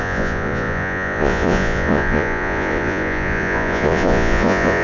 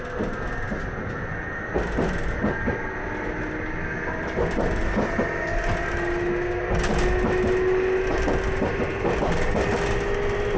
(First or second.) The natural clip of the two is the second